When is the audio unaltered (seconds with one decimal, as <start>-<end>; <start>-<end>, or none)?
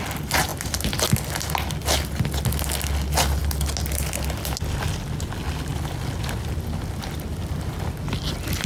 0.0-8.7